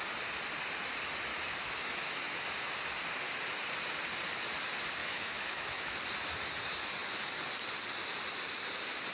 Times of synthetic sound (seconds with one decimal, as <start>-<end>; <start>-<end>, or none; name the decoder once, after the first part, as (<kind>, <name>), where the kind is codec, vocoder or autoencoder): 1.3-2.1 (autoencoder, DAC-VAE); 5.0-6.0